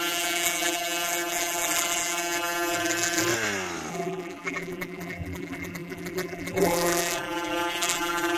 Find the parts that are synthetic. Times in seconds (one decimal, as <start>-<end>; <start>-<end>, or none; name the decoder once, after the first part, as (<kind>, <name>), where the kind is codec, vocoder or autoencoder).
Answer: 0.0-3.3 (vocoder, BigVGAN v2); 3.9-8.4